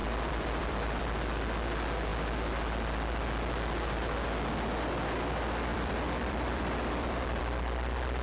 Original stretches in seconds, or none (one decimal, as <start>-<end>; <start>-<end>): 1.0-5.7; 7.4-8.2